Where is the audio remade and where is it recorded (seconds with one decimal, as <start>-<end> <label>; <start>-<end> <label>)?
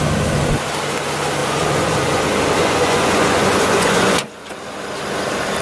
0.0-1.4 recorded; 1.4-2.2 remade; 2.2-2.6 recorded; 2.6-4.5 remade; 4.5-5.6 recorded